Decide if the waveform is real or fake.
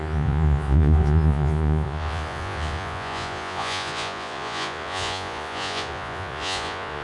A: fake